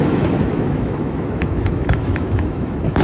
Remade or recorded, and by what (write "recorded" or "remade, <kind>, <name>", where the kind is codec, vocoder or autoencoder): remade, autoencoder, DAC-VAE